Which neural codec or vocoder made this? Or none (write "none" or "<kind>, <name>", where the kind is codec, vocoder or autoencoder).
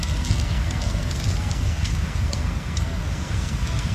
codec, SNAC